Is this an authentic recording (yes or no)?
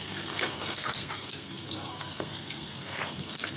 no